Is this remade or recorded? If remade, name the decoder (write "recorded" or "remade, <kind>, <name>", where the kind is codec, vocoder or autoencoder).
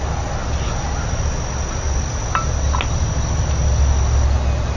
recorded